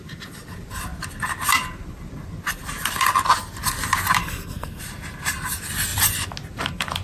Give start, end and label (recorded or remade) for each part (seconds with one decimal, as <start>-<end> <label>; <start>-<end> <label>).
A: 0.0-4.2 recorded; 4.2-4.8 remade; 4.8-7.0 recorded